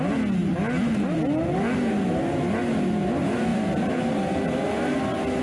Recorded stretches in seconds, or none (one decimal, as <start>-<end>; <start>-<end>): 0.0-5.4

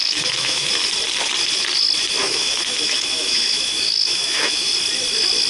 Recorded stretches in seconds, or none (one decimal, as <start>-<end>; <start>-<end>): 0.7-2.2; 4.7-5.5